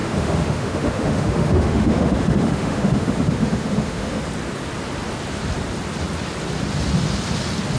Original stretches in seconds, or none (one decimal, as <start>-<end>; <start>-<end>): 4.2-7.8